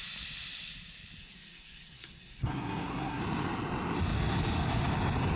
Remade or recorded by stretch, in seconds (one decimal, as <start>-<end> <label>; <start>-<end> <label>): 0.0-1.2 recorded; 1.2-3.2 remade; 3.2-5.4 recorded